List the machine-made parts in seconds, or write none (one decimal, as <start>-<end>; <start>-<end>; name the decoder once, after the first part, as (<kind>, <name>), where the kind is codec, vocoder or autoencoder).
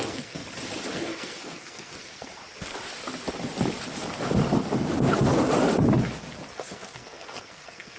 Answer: 0.0-0.4 (codec, SNAC); 0.9-2.4; 6.6-8.0